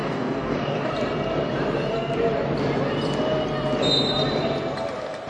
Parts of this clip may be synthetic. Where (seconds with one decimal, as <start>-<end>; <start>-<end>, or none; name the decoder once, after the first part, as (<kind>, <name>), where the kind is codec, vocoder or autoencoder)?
0.0-0.9 (codec, DAC)